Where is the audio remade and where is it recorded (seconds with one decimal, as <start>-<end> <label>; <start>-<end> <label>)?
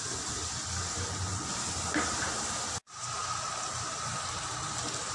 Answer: 0.0-0.4 remade; 0.4-1.9 recorded; 1.9-3.2 remade; 3.2-5.1 recorded